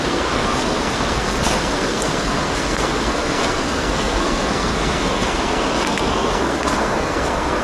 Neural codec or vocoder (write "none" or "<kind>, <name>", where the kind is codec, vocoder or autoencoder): codec, SNAC